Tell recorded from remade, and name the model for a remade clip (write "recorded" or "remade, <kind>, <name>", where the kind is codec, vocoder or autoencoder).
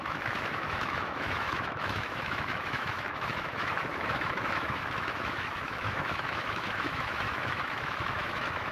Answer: remade, autoencoder, DAC-VAE